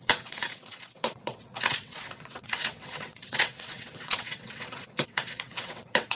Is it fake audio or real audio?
fake